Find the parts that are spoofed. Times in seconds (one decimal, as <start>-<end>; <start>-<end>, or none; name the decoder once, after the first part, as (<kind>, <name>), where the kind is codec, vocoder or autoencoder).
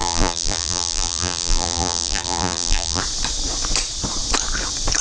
0.0-3.0 (vocoder, BigVGAN v2)